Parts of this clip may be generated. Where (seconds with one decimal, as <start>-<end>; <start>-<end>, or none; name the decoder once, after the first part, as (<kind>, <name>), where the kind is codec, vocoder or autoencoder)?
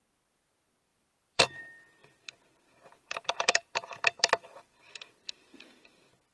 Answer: 0.9-1.6 (vocoder, BigVGAN v2); 2.0-5.6